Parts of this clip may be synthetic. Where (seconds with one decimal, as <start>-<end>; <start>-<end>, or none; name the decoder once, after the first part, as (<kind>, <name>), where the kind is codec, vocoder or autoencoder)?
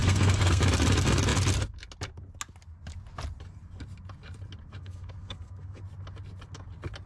0.0-0.6 (codec, SNAC); 4.8-5.8